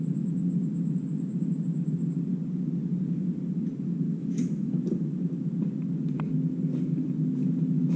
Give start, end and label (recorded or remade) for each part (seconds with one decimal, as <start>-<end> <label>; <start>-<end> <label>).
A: 0.0-4.1 recorded; 4.1-4.7 remade; 4.7-8.0 recorded